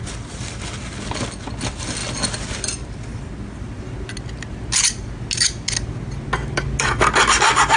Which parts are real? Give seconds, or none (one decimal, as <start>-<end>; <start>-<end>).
0.0-7.8